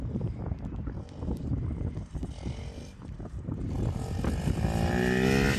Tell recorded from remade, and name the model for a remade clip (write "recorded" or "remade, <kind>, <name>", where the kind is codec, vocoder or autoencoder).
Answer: recorded